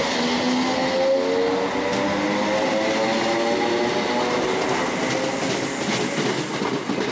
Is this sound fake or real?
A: real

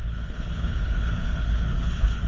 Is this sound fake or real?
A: fake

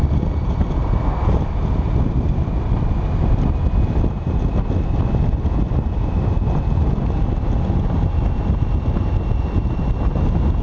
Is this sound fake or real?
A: real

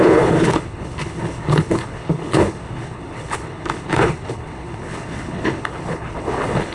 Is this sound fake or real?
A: fake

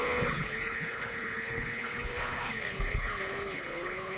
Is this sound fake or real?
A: fake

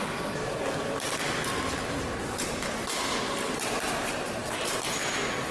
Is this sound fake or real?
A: real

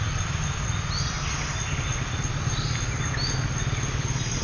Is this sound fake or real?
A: real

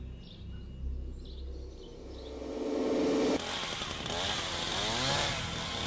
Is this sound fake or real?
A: real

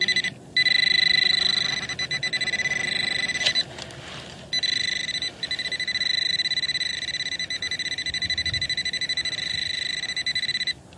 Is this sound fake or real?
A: real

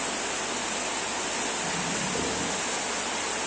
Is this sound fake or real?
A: real